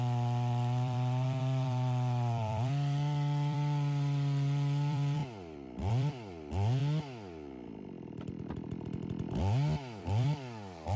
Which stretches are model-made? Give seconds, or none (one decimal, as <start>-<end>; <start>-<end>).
0.0-6.8; 10.0-11.0

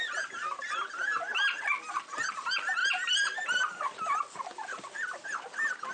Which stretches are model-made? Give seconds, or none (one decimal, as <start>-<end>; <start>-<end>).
none

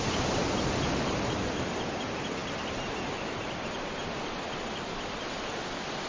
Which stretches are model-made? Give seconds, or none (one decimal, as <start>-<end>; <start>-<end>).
none

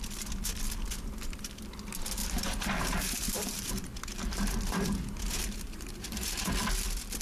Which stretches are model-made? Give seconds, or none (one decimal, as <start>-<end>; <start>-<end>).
2.2-6.5

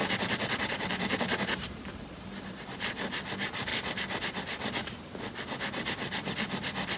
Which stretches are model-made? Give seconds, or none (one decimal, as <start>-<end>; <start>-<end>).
0.0-3.7

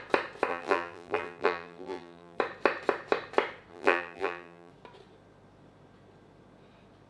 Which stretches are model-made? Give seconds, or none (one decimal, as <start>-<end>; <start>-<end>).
0.5-2.4; 3.7-4.7

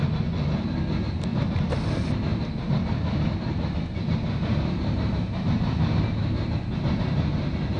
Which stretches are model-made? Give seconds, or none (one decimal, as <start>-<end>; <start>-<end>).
1.3-1.8; 2.3-7.0

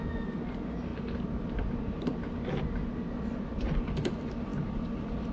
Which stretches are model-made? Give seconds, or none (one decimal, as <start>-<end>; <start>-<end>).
none